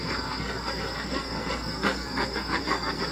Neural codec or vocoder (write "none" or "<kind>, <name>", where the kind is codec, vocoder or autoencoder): codec, SNAC